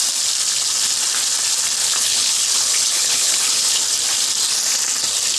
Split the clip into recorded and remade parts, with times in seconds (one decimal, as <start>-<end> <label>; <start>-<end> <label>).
0.0-1.8 recorded; 1.8-3.8 remade; 3.8-5.4 recorded